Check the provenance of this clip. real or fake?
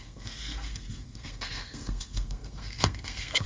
fake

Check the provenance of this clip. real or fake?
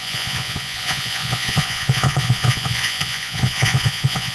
fake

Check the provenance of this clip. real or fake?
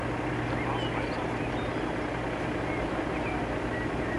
real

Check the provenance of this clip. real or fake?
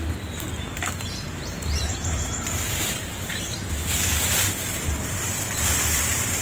fake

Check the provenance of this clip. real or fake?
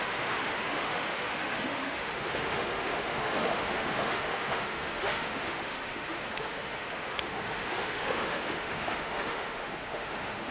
fake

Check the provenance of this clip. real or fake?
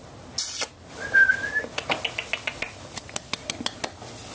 real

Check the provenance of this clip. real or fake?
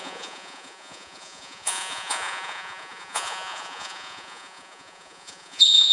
fake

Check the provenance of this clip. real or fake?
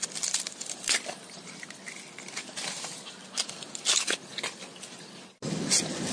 real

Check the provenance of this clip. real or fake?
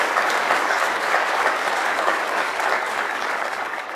fake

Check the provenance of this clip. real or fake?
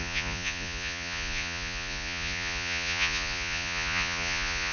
fake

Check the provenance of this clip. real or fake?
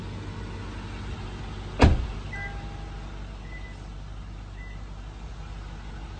real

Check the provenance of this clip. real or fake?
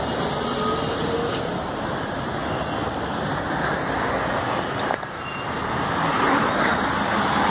real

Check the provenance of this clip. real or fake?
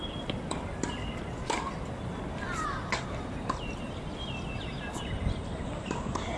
fake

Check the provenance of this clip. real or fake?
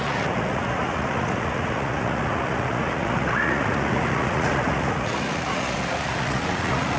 fake